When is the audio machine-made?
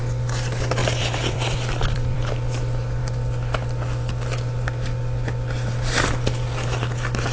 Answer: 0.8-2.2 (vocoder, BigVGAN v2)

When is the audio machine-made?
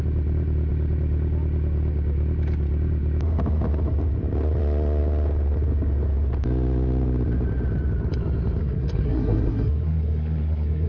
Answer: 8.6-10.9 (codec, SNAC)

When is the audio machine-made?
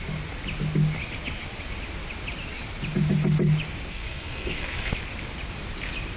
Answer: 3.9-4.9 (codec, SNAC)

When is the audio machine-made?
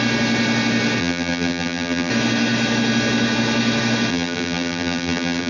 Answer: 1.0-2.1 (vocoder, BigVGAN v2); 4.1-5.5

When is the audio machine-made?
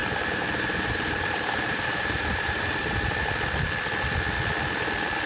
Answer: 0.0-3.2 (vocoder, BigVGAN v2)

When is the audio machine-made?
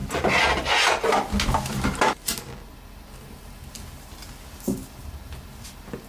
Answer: none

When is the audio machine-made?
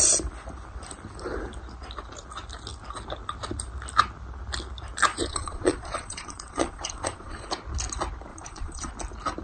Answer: 5.1-7.5 (vocoder, Vocos); 8.3-8.9